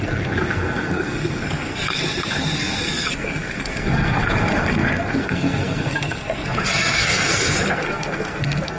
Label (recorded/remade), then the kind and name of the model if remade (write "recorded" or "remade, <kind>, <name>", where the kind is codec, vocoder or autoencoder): remade, codec, SNAC